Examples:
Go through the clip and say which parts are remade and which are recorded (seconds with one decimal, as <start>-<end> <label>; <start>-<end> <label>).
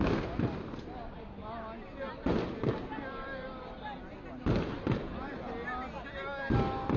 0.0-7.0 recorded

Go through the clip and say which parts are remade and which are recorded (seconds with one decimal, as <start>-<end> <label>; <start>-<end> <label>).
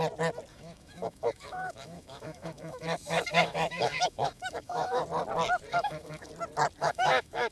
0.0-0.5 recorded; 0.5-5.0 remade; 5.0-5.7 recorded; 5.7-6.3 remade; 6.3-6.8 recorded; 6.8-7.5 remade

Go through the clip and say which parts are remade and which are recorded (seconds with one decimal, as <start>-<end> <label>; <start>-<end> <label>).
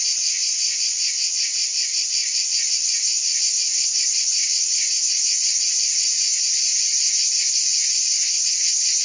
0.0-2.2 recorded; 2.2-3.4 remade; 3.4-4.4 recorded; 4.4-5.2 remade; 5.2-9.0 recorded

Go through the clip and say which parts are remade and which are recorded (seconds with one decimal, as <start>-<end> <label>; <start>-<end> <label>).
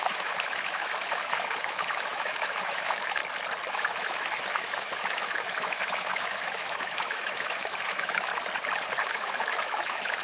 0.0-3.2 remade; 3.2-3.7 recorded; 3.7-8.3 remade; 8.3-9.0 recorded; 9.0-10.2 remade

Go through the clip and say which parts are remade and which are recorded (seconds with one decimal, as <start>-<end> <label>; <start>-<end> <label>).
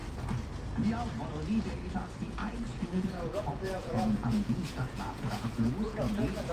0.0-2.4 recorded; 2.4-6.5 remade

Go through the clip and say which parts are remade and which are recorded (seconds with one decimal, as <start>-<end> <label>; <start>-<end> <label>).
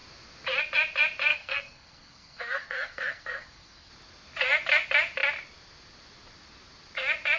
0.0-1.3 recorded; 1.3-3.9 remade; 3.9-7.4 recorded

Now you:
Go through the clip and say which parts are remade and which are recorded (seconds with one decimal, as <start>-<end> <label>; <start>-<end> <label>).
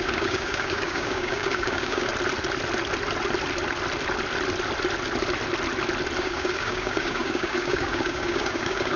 0.0-2.1 remade; 2.1-6.2 recorded; 6.2-9.0 remade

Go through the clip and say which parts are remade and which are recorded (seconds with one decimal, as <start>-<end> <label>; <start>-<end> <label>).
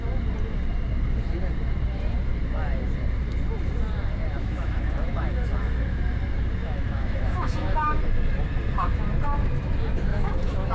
0.0-4.4 recorded; 4.4-5.3 remade; 5.3-6.6 recorded; 6.6-8.0 remade; 8.0-10.1 recorded; 10.1-10.7 remade